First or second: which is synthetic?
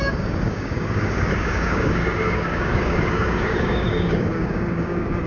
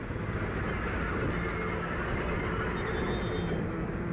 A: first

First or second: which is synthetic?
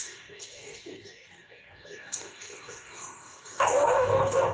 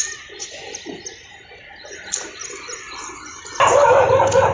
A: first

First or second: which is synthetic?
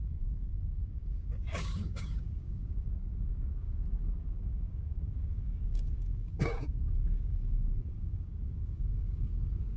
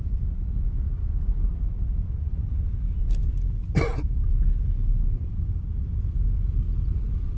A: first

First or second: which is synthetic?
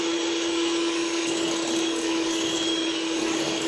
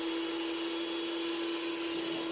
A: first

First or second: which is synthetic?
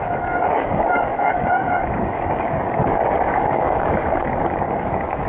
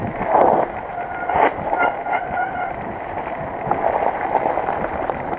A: first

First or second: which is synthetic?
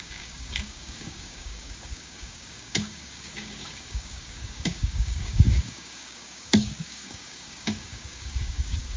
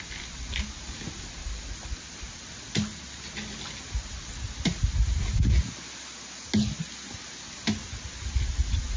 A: first